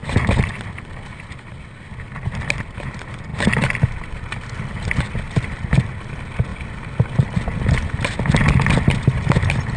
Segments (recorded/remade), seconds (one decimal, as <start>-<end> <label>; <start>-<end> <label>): 0.0-9.8 recorded